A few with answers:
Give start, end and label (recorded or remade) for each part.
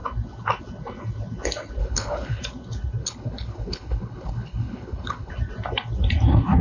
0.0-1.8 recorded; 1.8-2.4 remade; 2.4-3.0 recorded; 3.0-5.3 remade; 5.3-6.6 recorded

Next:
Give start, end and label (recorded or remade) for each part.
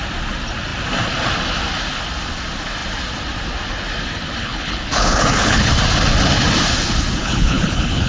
0.0-4.4 recorded; 4.4-5.7 remade; 5.7-7.2 recorded; 7.2-8.1 remade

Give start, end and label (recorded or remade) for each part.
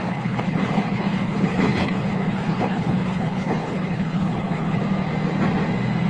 0.0-4.8 remade; 4.8-6.1 recorded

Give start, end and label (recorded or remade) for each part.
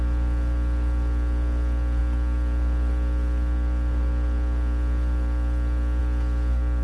0.0-6.8 recorded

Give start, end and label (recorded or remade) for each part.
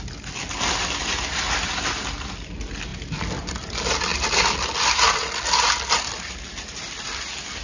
0.0-7.6 recorded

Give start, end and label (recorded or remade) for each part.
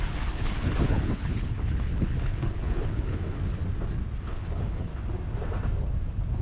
0.0-3.6 remade; 3.6-4.2 recorded; 4.2-4.9 remade; 4.9-6.4 recorded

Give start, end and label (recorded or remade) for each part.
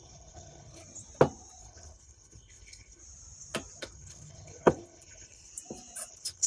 0.0-0.8 remade; 0.8-1.6 recorded; 1.6-3.0 remade; 3.0-3.8 recorded; 3.8-5.5 remade; 5.5-6.1 recorded; 6.1-6.5 remade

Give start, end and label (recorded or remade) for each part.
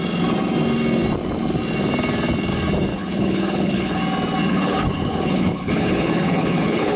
0.0-2.9 recorded; 2.9-4.0 remade; 4.0-4.5 recorded; 4.5-7.0 remade